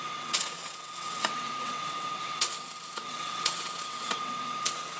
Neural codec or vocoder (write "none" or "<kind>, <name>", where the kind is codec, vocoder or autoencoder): vocoder, WaveNeXt